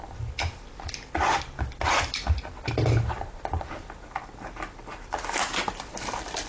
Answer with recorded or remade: recorded